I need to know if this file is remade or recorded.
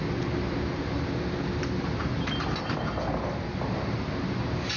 recorded